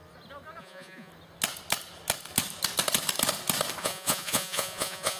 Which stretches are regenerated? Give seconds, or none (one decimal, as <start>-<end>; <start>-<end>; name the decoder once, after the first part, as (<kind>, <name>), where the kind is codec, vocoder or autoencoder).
0.6-1.1 (vocoder, Vocos); 3.8-5.2